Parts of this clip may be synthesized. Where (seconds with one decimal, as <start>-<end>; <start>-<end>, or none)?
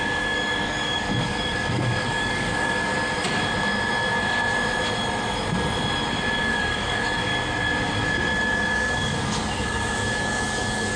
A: 0.0-2.9; 6.4-7.3; 8.4-11.0